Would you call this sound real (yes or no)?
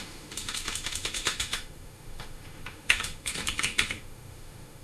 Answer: no